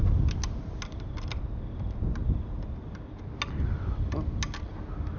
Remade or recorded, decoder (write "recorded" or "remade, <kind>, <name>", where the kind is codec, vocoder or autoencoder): recorded